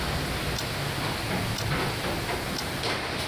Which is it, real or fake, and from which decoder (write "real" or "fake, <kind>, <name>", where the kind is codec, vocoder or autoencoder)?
real